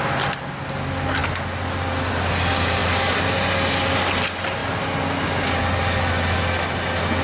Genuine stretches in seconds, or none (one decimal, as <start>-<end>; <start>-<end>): 0.0-7.2